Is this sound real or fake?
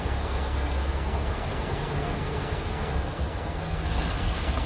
fake